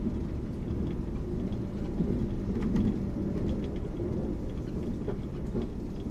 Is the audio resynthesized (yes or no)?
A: no